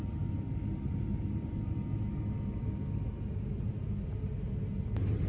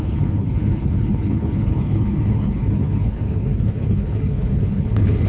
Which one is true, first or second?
first